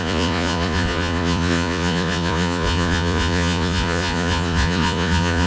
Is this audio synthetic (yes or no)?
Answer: yes